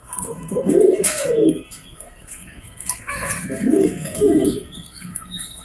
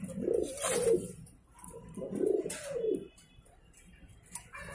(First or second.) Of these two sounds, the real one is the second